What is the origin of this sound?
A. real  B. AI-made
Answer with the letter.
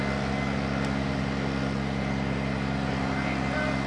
A